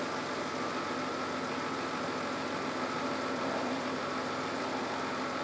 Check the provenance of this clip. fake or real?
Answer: real